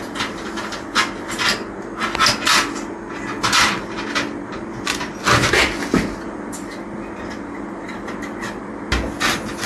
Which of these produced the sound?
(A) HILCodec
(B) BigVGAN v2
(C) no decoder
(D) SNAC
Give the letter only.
C